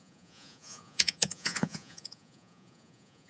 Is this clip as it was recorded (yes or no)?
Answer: no